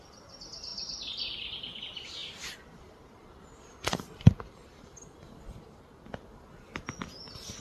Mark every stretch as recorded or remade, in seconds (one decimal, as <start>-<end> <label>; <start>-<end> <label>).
0.0-4.6 recorded; 4.6-5.5 remade; 5.5-7.6 recorded